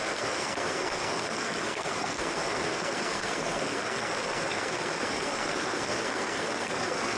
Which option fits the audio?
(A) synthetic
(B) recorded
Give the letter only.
A